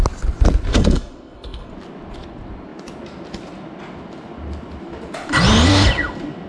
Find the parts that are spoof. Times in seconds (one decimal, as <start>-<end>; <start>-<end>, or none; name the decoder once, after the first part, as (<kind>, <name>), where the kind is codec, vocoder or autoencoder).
0.7-1.7 (codec, SNAC)